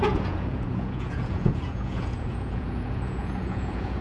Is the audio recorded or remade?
remade